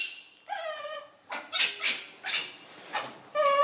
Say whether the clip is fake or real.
real